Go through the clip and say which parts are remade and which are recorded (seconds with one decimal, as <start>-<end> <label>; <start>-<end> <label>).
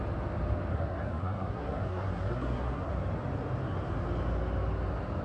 0.0-0.7 recorded; 0.7-2.9 remade; 2.9-5.2 recorded